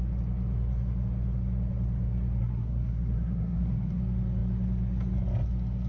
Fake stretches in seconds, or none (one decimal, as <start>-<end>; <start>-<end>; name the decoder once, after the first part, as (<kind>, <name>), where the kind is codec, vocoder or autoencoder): 2.4-4.0 (codec, SNAC)